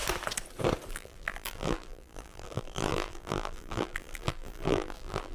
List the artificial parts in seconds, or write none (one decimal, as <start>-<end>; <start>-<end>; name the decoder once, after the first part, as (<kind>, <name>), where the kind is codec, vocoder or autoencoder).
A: 0.9-5.3 (vocoder, BigVGAN v2)